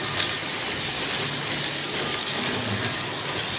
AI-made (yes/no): no